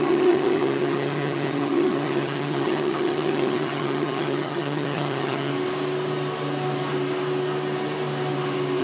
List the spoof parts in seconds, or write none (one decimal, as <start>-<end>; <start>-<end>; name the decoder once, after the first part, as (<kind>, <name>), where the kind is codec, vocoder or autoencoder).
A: 0.0-5.5 (vocoder, HiFi-GAN)